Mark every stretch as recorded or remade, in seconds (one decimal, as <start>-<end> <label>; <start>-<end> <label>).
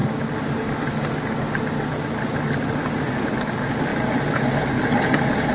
0.0-5.5 recorded